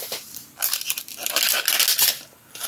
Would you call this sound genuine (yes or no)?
yes